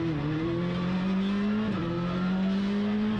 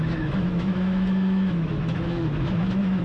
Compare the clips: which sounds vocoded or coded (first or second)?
second